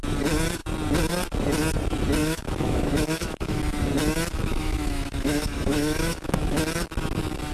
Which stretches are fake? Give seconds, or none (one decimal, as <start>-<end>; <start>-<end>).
2.2-3.6; 4.3-6.6